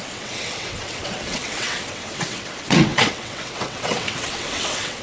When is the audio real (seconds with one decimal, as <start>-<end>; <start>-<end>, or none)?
none